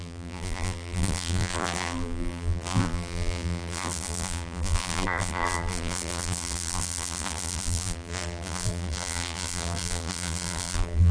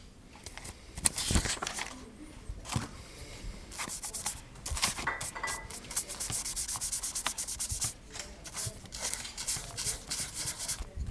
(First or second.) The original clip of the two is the second